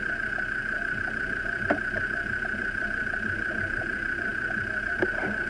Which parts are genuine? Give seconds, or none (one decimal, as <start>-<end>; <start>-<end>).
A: 0.0-5.5